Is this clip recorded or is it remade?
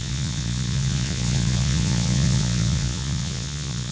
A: remade